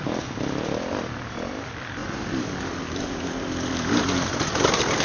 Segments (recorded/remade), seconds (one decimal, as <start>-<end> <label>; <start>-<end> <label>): 0.0-5.0 recorded